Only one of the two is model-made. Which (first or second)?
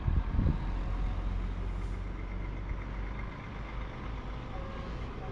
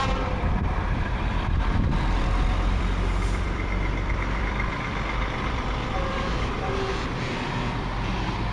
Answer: second